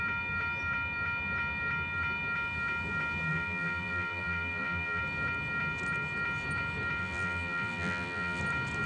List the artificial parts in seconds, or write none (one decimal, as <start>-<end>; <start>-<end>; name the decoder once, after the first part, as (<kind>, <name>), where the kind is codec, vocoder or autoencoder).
3.3-5.0 (vocoder, BigVGAN v2); 7.0-8.4